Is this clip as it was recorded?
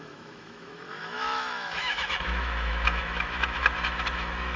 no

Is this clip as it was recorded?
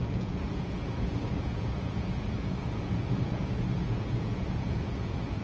no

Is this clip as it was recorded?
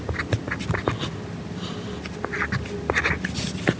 yes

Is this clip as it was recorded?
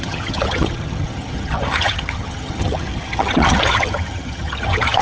no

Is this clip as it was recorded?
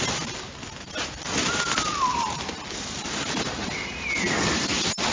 yes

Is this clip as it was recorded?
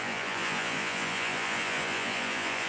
no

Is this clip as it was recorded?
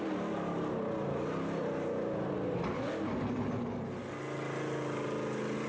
yes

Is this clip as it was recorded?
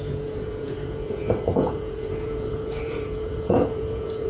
no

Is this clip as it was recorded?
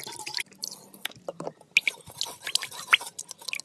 yes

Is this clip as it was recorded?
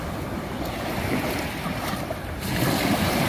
yes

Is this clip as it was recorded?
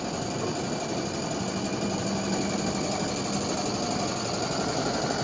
yes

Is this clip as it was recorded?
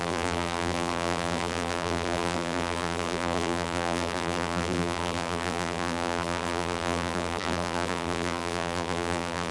no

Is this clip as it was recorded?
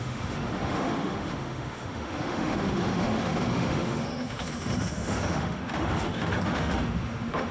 no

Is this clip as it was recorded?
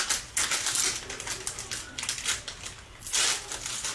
yes